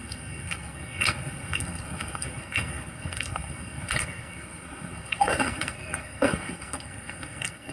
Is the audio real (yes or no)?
no